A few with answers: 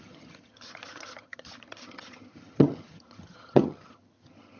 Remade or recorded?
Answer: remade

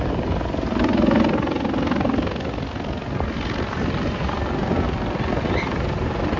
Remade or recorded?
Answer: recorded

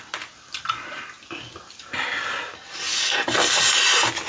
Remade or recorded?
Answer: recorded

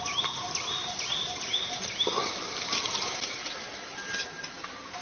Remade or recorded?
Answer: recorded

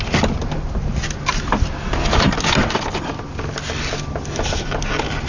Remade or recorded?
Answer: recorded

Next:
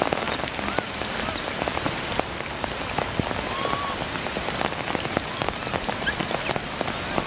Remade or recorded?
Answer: recorded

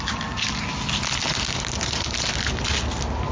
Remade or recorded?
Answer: recorded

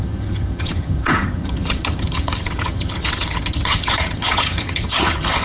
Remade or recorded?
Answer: remade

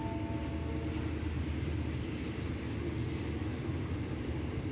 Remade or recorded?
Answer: recorded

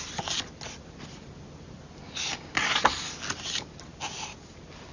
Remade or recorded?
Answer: recorded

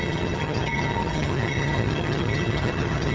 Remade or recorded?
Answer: remade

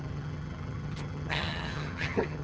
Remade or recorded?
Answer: remade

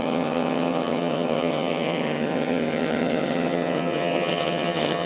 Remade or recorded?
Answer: remade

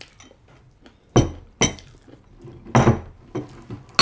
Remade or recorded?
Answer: recorded